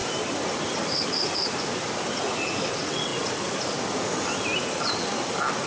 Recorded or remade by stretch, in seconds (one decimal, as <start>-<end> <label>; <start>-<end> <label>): 0.0-2.7 recorded; 2.7-3.1 remade; 3.1-5.7 recorded